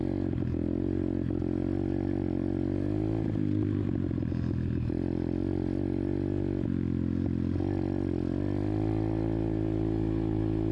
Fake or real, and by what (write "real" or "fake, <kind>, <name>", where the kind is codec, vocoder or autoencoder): real